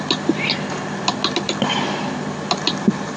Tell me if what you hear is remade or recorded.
recorded